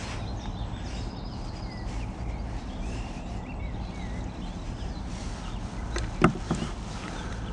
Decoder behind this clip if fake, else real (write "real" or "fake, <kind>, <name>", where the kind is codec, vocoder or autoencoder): real